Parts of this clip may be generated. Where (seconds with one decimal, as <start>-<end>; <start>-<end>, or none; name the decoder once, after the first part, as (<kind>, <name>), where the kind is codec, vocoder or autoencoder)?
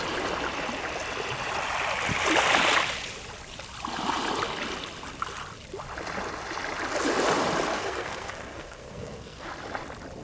7.7-9.5 (codec, SNAC)